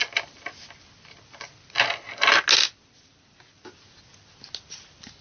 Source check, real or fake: real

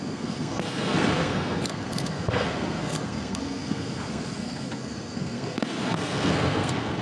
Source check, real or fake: fake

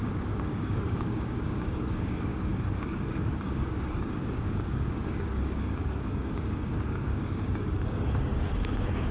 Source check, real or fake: fake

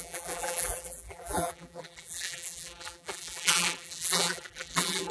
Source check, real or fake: fake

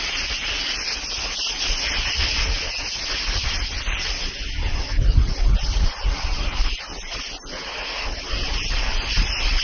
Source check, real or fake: real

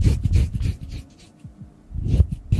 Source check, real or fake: real